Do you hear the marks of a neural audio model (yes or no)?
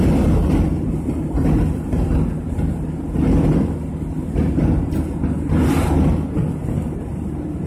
no